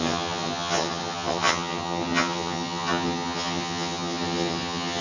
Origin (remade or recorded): remade